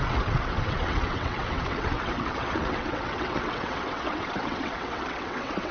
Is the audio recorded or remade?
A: remade